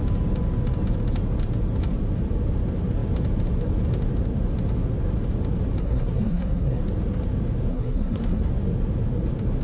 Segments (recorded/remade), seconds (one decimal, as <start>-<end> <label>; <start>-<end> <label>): 0.0-5.8 recorded; 5.8-6.8 remade; 6.8-7.7 recorded; 7.7-8.5 remade; 8.5-9.6 recorded